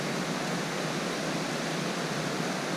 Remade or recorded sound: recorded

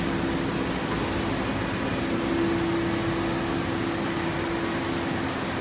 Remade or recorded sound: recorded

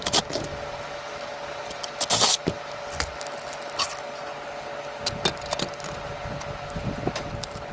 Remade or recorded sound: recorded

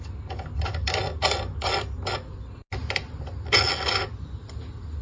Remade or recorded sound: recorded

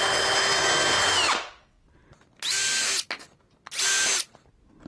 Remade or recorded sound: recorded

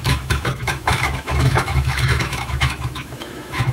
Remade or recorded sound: remade